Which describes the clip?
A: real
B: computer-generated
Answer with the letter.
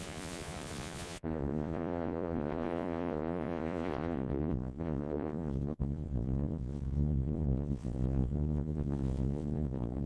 B